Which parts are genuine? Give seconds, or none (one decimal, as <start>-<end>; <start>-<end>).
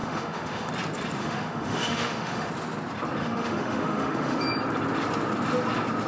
0.7-1.2; 2.5-3.2; 4.4-6.1